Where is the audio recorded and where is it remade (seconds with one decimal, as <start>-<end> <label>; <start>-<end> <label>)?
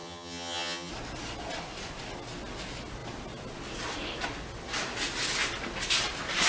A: 0.0-0.9 remade; 0.9-6.5 recorded